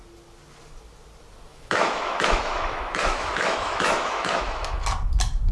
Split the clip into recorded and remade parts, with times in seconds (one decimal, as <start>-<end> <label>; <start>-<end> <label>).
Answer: 0.0-1.5 recorded; 1.5-4.8 remade; 4.8-5.5 recorded